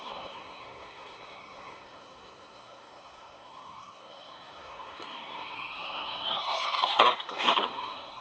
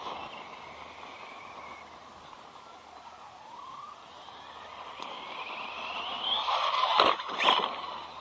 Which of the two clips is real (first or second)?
second